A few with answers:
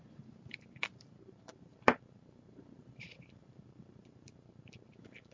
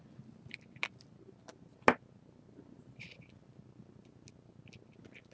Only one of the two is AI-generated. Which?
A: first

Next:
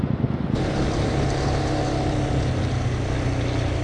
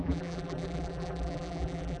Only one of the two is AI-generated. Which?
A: second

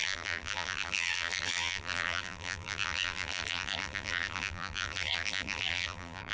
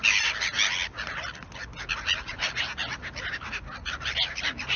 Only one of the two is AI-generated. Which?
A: first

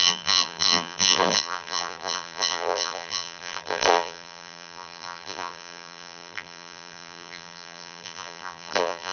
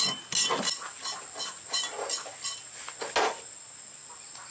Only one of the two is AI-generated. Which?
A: first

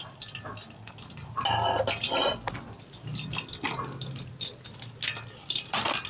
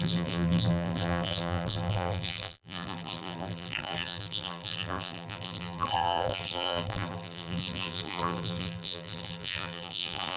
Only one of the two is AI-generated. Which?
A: second